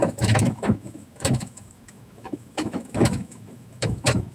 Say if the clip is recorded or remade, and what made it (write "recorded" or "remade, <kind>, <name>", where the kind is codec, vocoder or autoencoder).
remade, autoencoder, DAC-VAE